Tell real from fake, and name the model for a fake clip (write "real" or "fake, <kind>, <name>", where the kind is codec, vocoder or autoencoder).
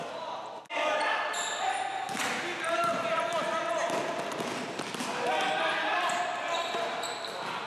real